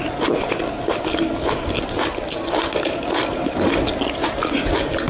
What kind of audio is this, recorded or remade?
recorded